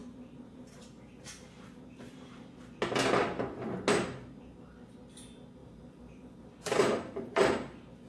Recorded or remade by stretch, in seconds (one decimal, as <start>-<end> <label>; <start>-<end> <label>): 0.0-2.4 remade; 2.4-5.6 recorded; 5.6-7.3 remade; 7.3-8.1 recorded

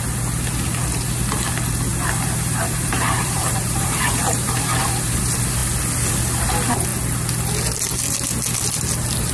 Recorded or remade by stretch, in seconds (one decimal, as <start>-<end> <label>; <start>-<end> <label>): 0.0-1.9 recorded; 1.9-4.8 remade; 4.8-9.3 recorded

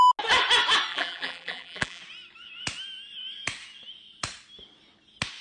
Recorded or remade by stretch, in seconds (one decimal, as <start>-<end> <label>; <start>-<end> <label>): 0.0-0.9 recorded; 0.9-2.0 remade; 2.0-5.4 recorded

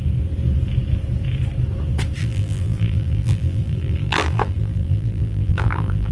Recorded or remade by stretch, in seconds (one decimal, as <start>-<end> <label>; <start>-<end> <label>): 0.0-2.2 recorded; 2.2-6.1 remade

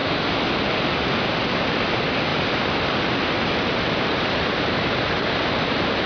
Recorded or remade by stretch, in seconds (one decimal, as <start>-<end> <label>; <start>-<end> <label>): 0.0-2.3 recorded; 2.3-5.6 remade; 5.6-6.1 recorded

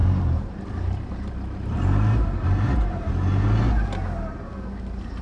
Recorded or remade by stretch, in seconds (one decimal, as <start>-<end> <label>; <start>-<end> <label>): 0.0-3.1 remade; 3.1-5.2 recorded

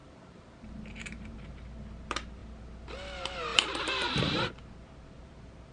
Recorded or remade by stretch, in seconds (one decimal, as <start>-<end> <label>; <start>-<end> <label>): 0.0-1.5 remade; 1.5-3.5 recorded; 3.5-4.5 remade; 4.5-5.7 recorded

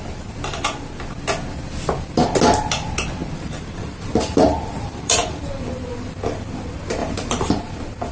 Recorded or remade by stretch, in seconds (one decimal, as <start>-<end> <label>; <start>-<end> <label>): 0.0-3.2 recorded; 3.2-5.5 remade; 5.5-7.0 recorded; 7.0-7.5 remade; 7.5-8.1 recorded